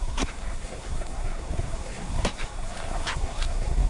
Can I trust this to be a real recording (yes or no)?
no